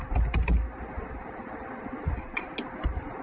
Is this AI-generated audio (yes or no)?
no